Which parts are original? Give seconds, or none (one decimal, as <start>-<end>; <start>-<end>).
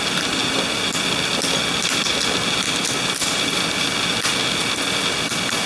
0.0-5.7